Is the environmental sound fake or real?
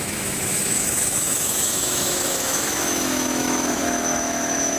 fake